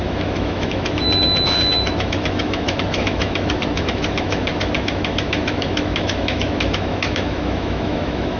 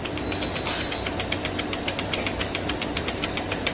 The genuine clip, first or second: second